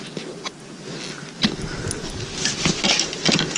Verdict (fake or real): real